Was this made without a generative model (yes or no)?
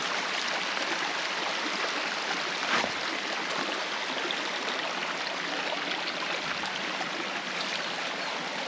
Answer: yes